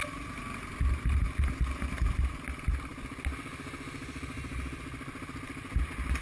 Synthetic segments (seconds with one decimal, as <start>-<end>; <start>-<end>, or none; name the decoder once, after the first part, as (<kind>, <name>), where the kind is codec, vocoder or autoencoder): none